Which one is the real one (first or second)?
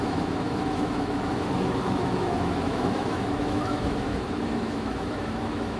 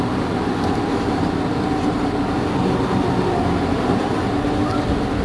second